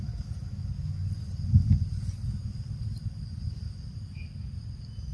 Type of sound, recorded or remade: recorded